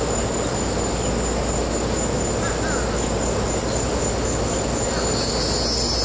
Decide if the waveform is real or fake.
real